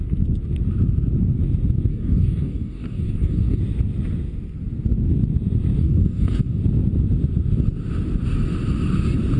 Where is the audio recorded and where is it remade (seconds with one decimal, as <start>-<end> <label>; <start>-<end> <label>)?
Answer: 0.0-1.9 recorded; 1.9-3.6 remade; 3.6-5.8 recorded; 5.8-6.6 remade; 6.6-9.4 recorded